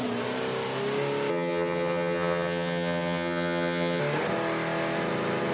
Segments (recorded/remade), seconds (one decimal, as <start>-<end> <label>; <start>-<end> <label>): 0.0-1.3 recorded; 1.3-4.0 remade; 4.0-5.5 recorded